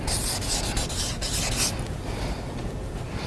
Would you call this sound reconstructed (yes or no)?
no